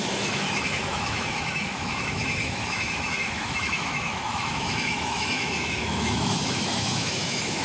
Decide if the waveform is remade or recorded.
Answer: remade